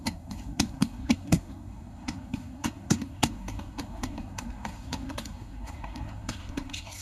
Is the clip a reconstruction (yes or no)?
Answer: yes